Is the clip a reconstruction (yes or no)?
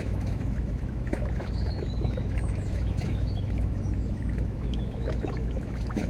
yes